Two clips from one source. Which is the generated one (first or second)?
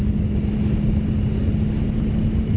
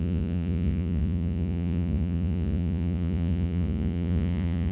second